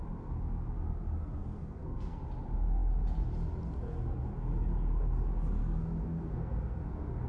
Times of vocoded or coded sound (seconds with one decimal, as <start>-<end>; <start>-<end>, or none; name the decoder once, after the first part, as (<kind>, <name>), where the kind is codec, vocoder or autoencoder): 1.4-2.2 (codec, SNAC); 5.6-7.3

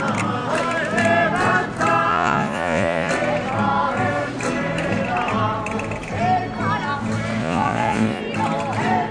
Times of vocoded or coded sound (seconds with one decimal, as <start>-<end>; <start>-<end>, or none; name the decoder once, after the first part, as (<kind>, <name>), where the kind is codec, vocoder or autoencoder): 2.1-3.1 (vocoder, Vocos); 7.4-8.2

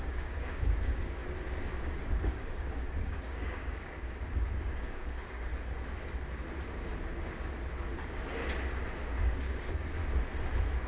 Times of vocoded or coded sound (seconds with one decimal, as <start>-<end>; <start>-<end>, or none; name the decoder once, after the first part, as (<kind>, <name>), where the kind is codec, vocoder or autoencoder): 0.0-1.2 (codec, DAC); 1.8-4.0; 4.6-5.5; 9.0-10.0